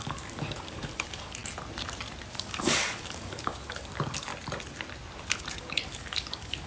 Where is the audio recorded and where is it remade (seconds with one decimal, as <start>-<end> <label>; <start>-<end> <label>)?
0.0-1.4 remade; 1.4-2.3 recorded; 2.3-4.3 remade; 4.3-5.6 recorded; 5.6-6.7 remade